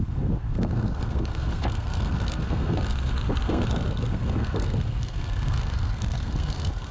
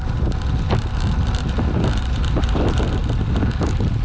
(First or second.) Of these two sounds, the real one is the second